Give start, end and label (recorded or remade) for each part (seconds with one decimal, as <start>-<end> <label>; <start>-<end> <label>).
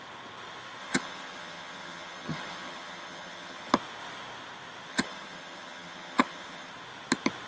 0.0-0.8 recorded; 0.8-3.7 remade; 3.7-4.9 recorded; 4.9-6.7 remade; 6.7-7.5 recorded